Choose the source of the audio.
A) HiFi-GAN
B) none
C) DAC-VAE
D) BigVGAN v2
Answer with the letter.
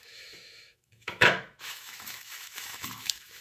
C